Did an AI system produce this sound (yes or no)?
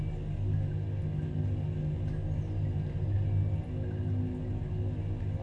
no